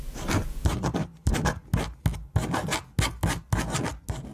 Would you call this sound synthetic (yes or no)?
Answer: no